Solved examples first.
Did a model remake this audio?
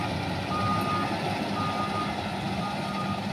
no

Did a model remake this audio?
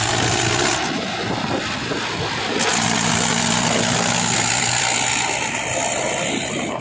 no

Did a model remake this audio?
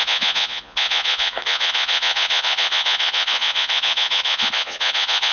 yes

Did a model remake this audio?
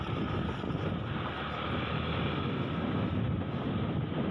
no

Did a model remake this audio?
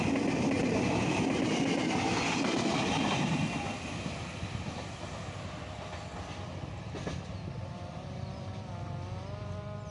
no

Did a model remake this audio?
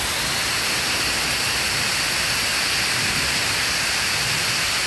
no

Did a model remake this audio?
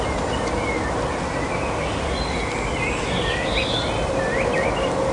no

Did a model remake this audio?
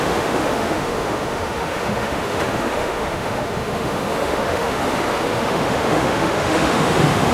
yes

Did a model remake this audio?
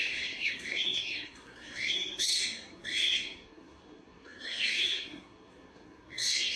yes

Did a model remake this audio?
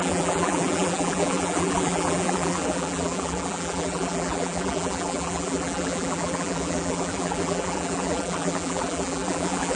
yes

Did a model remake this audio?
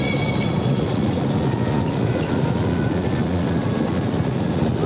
yes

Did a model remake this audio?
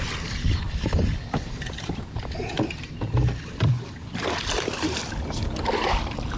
yes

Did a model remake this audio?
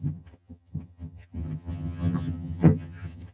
yes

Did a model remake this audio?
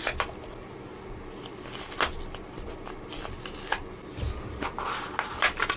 no